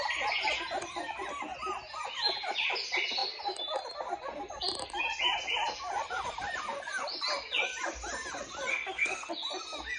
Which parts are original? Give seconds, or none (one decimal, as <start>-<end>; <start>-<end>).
0.0-8.7; 9.3-10.0